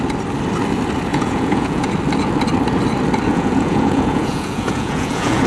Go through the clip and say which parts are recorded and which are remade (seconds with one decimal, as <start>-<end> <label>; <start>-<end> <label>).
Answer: 0.0-1.1 recorded; 1.1-1.9 remade; 1.9-3.3 recorded; 3.3-5.5 remade